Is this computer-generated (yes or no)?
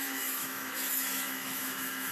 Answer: yes